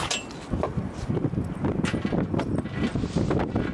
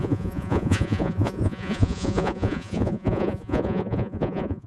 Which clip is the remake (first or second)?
second